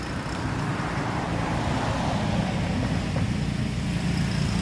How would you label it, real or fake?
real